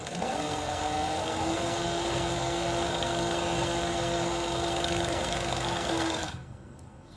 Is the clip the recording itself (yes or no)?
no